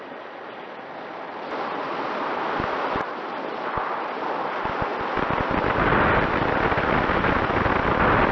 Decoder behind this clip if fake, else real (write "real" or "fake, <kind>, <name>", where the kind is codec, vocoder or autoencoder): real